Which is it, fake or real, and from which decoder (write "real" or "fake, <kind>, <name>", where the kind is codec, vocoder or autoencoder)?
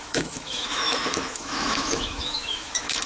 fake, autoencoder, DAC-VAE